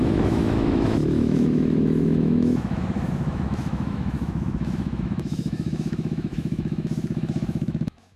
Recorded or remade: remade